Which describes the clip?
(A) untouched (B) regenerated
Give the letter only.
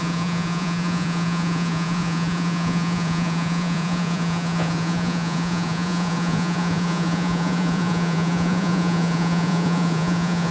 B